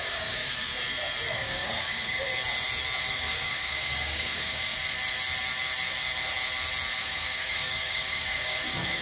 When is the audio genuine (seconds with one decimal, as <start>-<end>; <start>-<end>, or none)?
0.7-1.3; 2.3-3.1; 4.7-7.0